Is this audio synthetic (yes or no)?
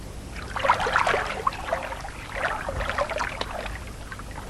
no